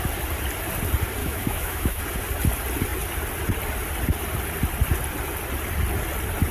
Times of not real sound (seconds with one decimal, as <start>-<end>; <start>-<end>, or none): 1.2-2.0